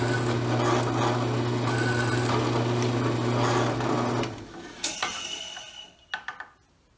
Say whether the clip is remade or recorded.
recorded